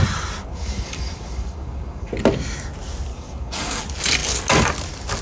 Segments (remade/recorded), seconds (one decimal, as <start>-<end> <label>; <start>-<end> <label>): 0.0-0.4 recorded; 0.4-2.1 remade; 2.1-3.1 recorded; 3.1-3.8 remade; 3.8-5.2 recorded